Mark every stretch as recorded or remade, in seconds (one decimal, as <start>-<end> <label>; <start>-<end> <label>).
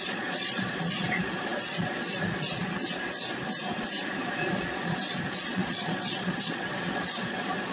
0.0-3.2 remade; 3.2-4.2 recorded; 4.2-7.7 remade